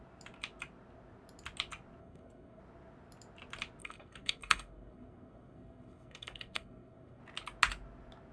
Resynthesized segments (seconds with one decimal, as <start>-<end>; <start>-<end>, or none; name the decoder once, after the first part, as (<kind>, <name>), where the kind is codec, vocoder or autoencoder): 2.0-2.6 (codec, SNAC); 3.8-7.2